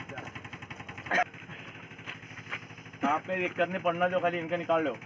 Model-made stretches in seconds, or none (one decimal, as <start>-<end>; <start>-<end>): none